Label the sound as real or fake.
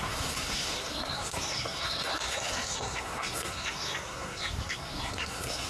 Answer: fake